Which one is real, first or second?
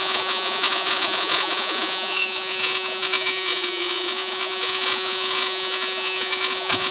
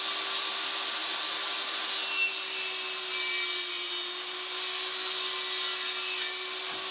second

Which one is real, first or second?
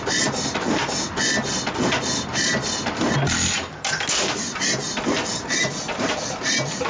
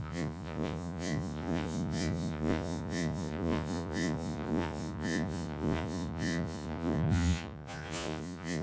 first